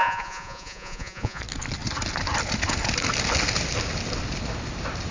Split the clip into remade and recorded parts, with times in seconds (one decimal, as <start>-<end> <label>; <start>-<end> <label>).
0.0-1.4 remade; 1.4-5.1 recorded